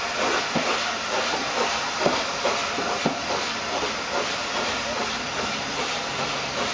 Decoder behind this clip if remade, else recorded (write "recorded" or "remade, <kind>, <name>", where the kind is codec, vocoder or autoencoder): recorded